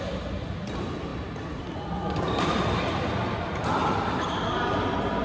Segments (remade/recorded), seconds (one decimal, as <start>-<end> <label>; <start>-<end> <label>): 0.0-5.2 recorded